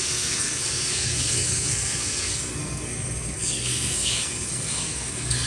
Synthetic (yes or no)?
yes